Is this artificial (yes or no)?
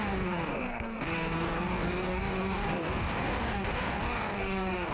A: yes